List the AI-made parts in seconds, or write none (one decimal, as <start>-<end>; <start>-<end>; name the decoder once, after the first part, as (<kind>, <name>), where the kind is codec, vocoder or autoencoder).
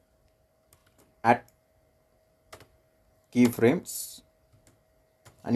none